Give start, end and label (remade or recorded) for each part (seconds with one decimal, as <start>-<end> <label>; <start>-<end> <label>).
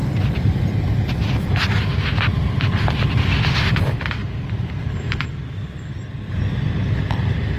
0.0-4.2 recorded; 4.2-6.4 remade; 6.4-7.6 recorded